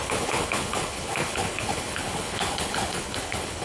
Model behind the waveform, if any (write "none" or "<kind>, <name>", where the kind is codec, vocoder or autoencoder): codec, HILCodec